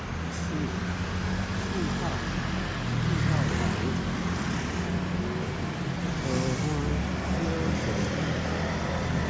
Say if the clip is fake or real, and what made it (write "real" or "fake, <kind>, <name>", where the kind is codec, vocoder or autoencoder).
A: real